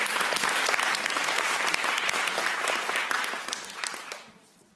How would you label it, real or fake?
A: real